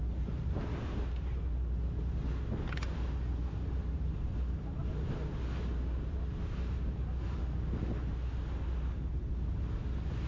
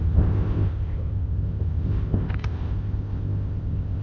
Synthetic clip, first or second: second